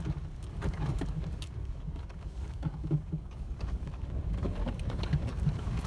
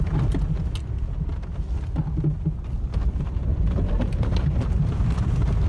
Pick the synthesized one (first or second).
first